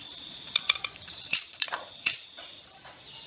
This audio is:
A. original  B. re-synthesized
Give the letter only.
B